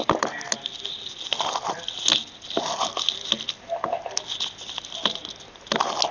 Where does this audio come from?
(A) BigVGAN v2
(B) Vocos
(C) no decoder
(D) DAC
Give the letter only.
C